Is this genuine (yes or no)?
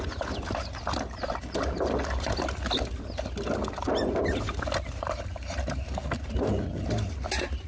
yes